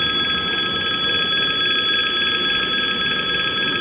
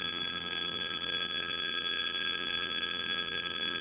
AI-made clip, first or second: second